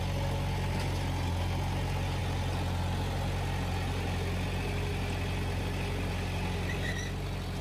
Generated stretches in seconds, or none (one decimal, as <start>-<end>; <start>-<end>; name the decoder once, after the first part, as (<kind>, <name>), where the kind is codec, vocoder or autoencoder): none